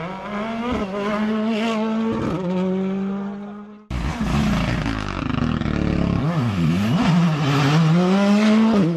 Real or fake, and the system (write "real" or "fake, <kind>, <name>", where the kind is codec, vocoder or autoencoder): real